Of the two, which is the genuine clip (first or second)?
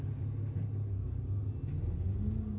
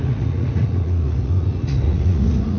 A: first